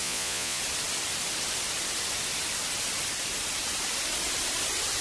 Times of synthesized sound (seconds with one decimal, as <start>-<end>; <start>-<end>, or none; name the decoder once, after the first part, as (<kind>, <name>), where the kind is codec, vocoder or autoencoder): 0.0-0.6 (vocoder, Vocos)